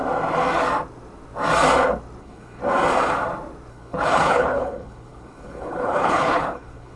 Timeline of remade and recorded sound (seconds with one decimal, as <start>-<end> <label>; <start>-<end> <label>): 0.0-2.2 recorded; 2.2-2.6 remade; 2.6-3.7 recorded; 3.7-7.0 remade